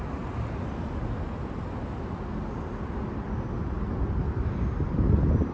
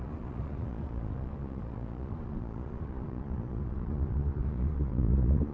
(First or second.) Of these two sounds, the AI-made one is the second